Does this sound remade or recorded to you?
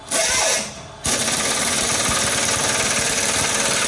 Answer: recorded